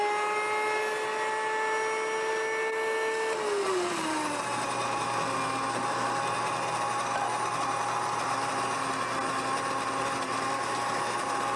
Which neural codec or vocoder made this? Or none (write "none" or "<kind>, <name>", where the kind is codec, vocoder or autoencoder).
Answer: none